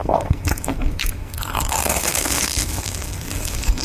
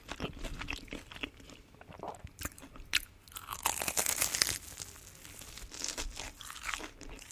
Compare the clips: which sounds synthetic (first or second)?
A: first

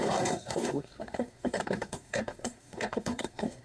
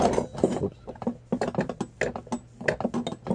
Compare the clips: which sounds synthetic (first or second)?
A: first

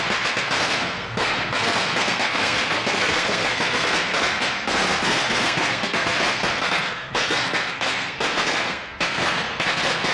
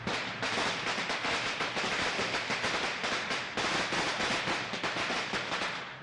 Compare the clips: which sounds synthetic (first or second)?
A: first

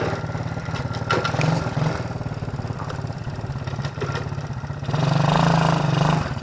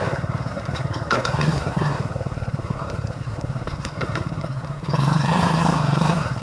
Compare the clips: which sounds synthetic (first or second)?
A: second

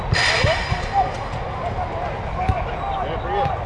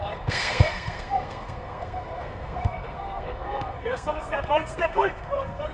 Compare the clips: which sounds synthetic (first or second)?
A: second